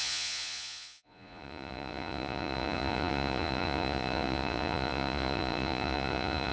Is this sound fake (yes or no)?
yes